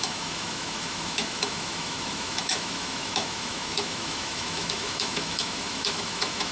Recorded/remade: remade